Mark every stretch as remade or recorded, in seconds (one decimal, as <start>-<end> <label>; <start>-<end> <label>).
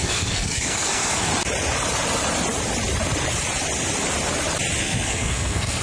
0.0-1.3 remade; 1.3-4.8 recorded; 4.8-5.8 remade